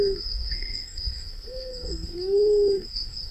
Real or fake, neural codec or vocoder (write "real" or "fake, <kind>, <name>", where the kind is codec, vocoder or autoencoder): fake, codec, SNAC